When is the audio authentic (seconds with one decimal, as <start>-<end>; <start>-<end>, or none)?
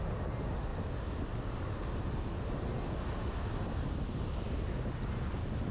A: 0.0-5.7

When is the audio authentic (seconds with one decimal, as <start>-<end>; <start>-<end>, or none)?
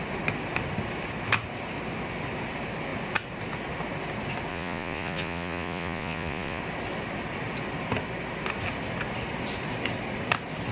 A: 0.0-4.5; 6.6-10.7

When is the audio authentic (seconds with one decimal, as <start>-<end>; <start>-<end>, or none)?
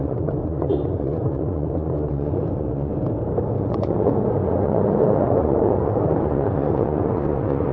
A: 2.9-3.6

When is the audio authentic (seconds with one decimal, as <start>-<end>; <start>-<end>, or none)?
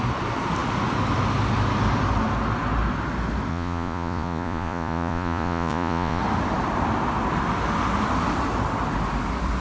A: 0.0-3.5; 6.2-9.6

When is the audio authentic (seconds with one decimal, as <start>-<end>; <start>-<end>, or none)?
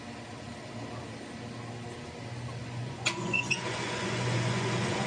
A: 0.0-2.6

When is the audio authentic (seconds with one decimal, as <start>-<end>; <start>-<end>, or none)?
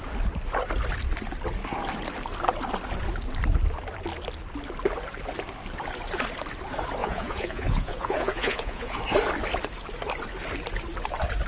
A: 0.0-7.0; 9.0-11.5